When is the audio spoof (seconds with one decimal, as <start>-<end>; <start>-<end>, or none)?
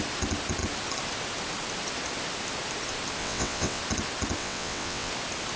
3.2-3.8; 4.4-5.1